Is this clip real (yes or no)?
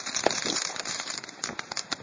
no